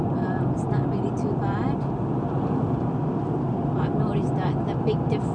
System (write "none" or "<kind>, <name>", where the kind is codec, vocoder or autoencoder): none